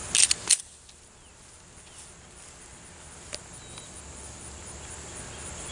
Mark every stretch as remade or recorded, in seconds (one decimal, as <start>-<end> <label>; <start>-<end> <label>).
0.0-5.7 recorded